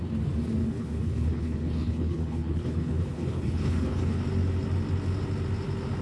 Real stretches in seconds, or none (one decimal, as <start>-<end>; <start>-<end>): 0.0-0.6; 4.2-6.0